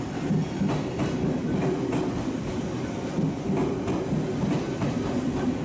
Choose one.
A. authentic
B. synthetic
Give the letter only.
A